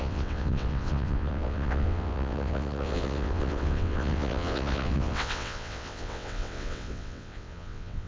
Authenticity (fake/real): fake